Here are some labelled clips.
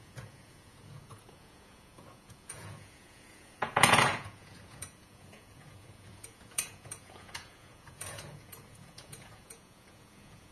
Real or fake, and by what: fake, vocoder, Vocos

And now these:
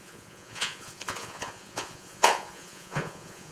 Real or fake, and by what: fake, vocoder, Vocos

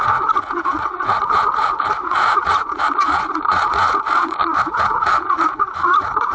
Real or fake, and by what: fake, vocoder, Vocos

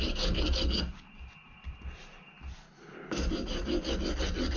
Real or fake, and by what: real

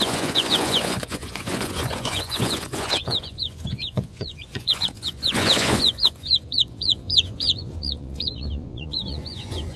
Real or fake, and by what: fake, vocoder, Vocos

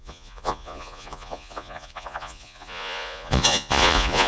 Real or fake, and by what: fake, vocoder, Vocos